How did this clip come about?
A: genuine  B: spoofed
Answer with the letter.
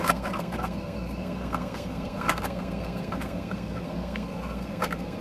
B